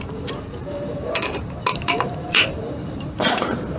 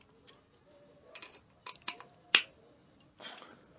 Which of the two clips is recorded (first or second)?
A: second